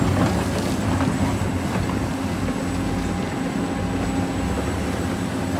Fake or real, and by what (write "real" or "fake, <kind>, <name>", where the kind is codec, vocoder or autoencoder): real